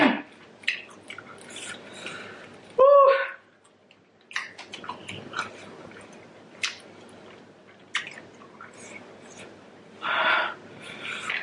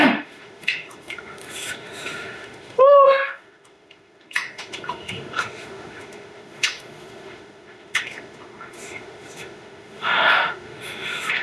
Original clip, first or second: first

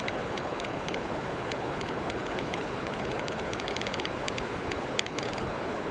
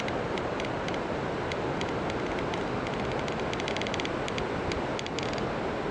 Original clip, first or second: second